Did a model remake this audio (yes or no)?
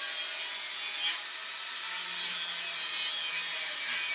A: no